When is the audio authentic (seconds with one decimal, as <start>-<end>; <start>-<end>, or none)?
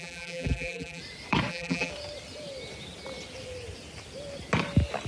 1.0-1.5; 1.9-5.1